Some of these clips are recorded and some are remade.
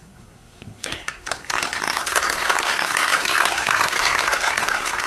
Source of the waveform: remade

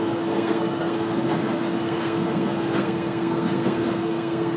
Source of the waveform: remade